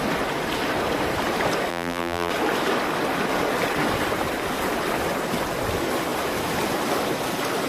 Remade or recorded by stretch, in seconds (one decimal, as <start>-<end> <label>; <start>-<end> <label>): 0.0-1.7 recorded; 1.7-2.3 remade; 2.3-7.7 recorded